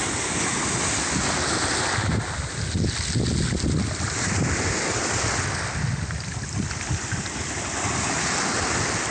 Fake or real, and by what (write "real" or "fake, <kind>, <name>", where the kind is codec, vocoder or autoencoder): real